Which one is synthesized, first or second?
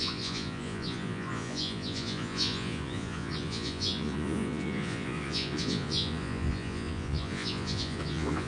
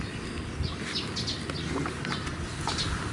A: first